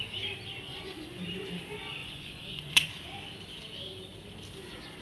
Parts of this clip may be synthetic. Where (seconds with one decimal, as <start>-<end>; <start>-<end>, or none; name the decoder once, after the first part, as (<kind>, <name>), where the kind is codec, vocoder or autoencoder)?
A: 0.7-1.2 (vocoder, Vocos); 2.0-2.9